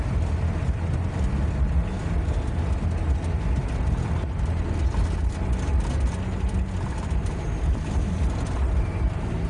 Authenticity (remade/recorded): recorded